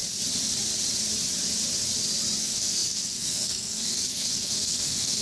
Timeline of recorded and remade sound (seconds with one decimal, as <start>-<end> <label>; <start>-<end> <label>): 0.0-2.4 recorded; 2.4-5.2 remade